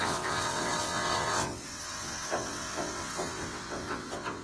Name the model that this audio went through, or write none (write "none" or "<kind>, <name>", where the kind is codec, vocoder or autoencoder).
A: vocoder, WaveNeXt